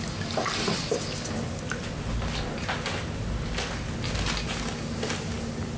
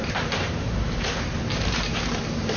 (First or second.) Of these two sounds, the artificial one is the second